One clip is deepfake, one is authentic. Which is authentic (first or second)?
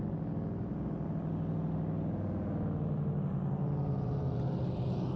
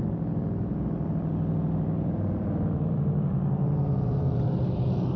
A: first